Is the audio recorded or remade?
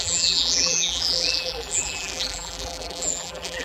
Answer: remade